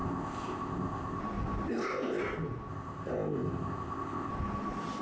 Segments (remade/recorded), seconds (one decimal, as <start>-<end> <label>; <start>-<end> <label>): 0.0-1.2 remade; 1.2-1.7 recorded; 1.7-2.2 remade; 2.2-2.7 recorded; 2.7-4.3 remade; 4.3-5.0 recorded